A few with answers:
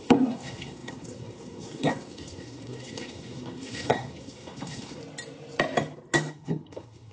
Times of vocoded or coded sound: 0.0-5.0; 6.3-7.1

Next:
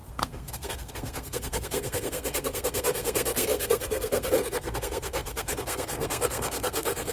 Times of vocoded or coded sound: 0.0-7.1

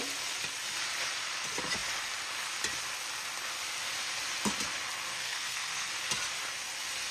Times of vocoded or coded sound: 5.1-5.9